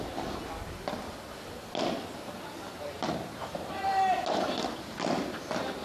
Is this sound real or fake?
real